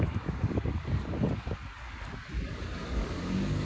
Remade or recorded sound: remade